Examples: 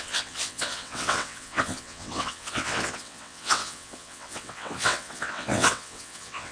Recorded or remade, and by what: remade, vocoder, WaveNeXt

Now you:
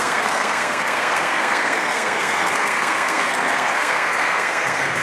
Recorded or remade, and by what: remade, codec, SNAC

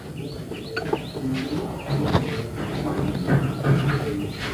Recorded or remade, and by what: recorded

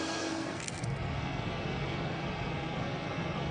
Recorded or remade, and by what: remade, codec, SNAC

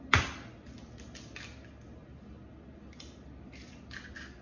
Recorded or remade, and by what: recorded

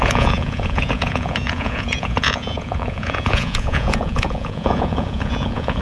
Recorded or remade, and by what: remade, vocoder, Vocos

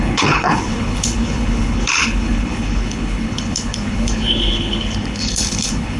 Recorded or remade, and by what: remade, codec, HILCodec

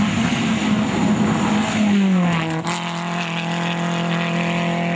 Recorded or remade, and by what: recorded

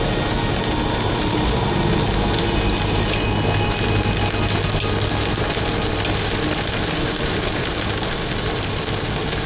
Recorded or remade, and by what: recorded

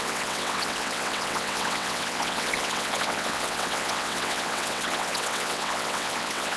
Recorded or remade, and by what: remade, vocoder, WaveNeXt